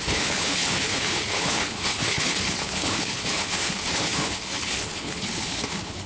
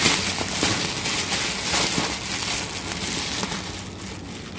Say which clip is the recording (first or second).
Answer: second